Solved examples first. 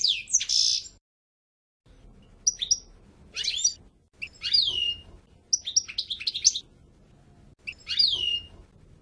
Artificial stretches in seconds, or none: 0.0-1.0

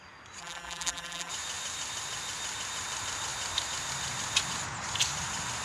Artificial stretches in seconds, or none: 0.4-1.3

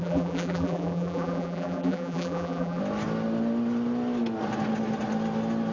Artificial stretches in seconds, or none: 0.0-2.8